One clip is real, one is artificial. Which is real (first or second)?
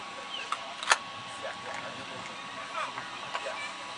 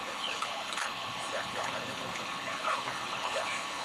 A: first